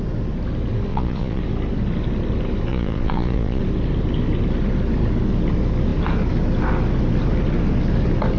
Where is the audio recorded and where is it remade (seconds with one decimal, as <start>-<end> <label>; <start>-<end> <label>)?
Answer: 0.0-0.9 recorded; 0.9-1.4 remade; 1.4-2.7 recorded; 2.7-3.6 remade; 3.6-8.4 recorded

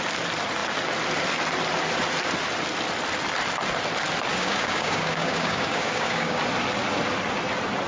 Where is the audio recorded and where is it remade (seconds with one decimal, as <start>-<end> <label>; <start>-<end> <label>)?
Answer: 0.0-4.3 recorded; 4.3-6.4 remade; 6.4-7.9 recorded

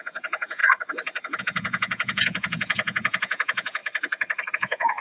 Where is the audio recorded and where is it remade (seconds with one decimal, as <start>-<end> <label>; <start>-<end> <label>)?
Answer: 0.0-0.6 remade; 0.6-1.4 recorded; 1.4-3.8 remade; 3.8-4.5 recorded; 4.5-5.0 remade

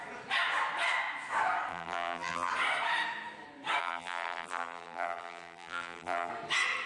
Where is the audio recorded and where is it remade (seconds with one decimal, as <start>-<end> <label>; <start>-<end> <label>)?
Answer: 0.0-1.7 recorded; 1.7-2.5 remade; 2.5-3.8 recorded; 3.8-6.3 remade; 6.3-6.9 recorded

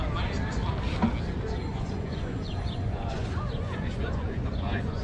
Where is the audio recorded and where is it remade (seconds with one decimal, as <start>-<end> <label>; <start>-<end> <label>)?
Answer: 0.0-1.7 recorded; 1.7-5.0 remade

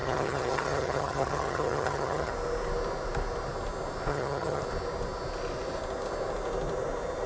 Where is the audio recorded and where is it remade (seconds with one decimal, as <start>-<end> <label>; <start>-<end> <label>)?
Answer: 0.0-2.3 remade; 2.3-4.1 recorded; 4.1-4.6 remade; 4.6-7.3 recorded

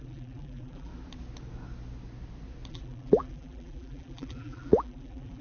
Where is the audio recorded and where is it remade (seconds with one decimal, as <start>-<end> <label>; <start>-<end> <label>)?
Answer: 0.0-0.9 remade; 0.9-2.7 recorded; 2.7-5.4 remade